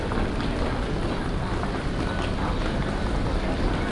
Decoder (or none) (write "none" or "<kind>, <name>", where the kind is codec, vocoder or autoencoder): none